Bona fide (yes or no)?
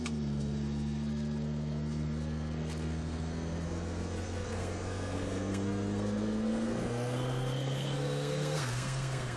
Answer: no